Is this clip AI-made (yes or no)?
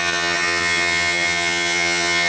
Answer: yes